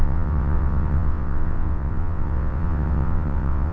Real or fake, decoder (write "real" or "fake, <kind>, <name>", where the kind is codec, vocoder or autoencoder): fake, vocoder, WaveNeXt